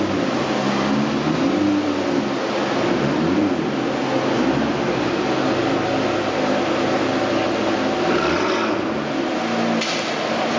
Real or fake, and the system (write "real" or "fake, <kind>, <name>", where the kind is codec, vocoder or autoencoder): real